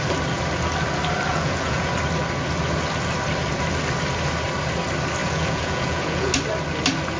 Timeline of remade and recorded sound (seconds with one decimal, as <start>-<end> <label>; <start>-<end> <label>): 0.0-1.3 recorded; 1.3-1.9 remade; 1.9-5.2 recorded; 5.2-6.3 remade; 6.3-7.2 recorded